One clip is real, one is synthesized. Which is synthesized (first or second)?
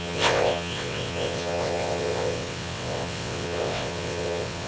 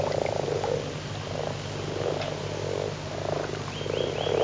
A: first